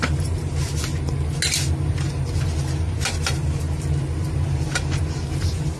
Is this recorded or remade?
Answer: recorded